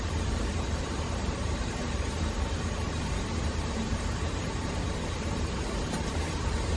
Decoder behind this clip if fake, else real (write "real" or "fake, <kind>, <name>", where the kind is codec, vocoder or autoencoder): fake, vocoder, BigVGAN v2